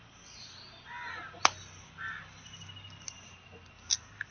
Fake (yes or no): no